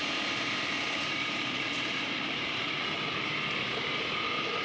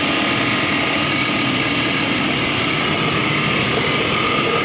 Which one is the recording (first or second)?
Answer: second